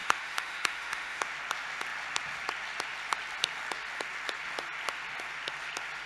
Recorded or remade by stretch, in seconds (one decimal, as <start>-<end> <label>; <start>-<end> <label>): 0.0-1.2 remade; 1.2-6.1 recorded

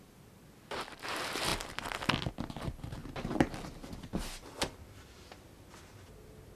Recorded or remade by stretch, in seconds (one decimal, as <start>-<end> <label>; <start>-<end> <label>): 0.0-6.6 recorded

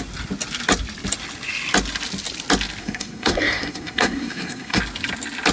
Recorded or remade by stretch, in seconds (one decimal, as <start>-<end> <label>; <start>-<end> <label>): 0.0-2.8 recorded; 2.8-4.8 remade; 4.8-5.5 recorded

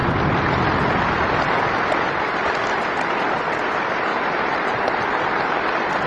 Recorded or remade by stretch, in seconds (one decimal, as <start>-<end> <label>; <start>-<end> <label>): 0.0-4.1 recorded; 4.1-4.9 remade; 4.9-6.1 recorded

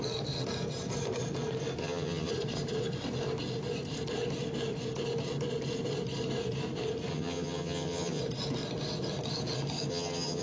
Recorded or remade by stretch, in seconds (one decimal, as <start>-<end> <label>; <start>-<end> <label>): 0.0-1.8 recorded; 1.8-2.3 remade; 2.3-7.1 recorded; 7.1-8.2 remade; 8.2-9.9 recorded; 9.9-10.4 remade

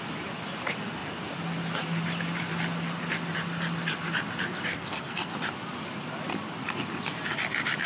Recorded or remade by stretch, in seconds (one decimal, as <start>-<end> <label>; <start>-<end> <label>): 0.0-4.7 recorded; 4.7-5.3 remade; 5.3-7.9 recorded

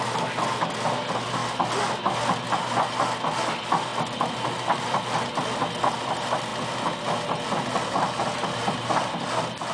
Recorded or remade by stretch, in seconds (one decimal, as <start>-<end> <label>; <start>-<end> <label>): 0.0-9.7 recorded